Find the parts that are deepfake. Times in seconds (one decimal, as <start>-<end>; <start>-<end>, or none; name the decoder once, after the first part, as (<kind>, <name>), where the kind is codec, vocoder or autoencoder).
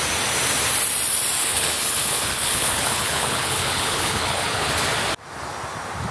1.4-4.7 (codec, HILCodec)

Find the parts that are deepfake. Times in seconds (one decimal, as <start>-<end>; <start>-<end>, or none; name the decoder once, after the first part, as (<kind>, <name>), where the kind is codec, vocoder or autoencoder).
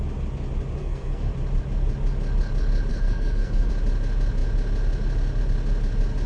0.8-1.3 (codec, SNAC); 2.9-3.7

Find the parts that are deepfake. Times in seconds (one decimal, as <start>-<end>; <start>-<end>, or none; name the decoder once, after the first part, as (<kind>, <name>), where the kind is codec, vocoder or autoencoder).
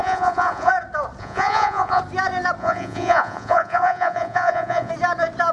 0.0-0.7 (vocoder, Vocos); 1.2-2.0; 2.6-4.9